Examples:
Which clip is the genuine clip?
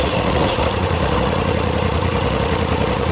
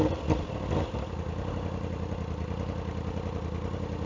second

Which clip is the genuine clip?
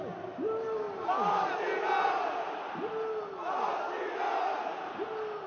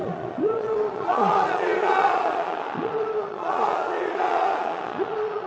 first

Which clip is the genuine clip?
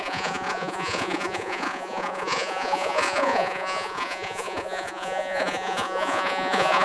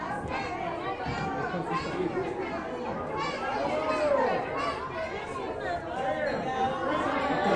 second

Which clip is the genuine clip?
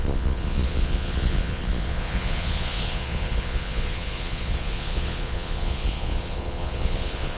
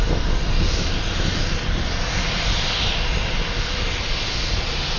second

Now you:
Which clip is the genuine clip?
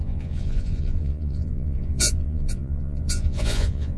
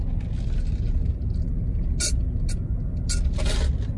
second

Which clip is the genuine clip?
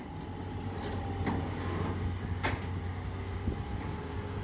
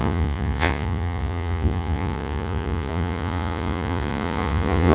first